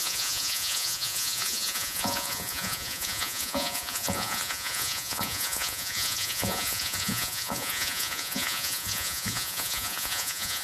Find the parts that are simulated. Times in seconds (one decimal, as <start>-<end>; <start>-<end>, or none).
0.0-10.6